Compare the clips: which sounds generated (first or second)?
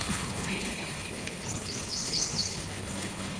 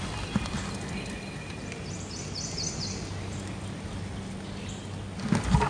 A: first